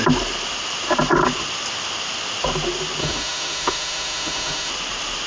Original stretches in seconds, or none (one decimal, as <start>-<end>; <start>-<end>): 0.0-3.0; 4.7-5.3